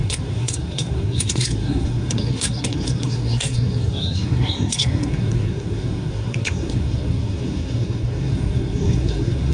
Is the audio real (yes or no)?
no